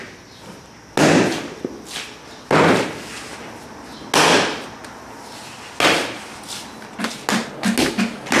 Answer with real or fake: real